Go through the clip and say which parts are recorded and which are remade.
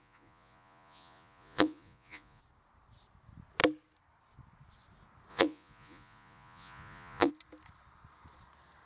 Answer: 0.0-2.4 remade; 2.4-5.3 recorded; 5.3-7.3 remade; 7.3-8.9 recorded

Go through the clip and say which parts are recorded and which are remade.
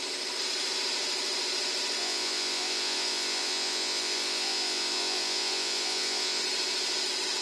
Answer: 0.0-2.0 recorded; 2.0-6.4 remade; 6.4-7.4 recorded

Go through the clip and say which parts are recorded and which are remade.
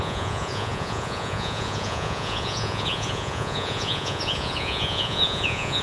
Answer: 0.0-5.8 remade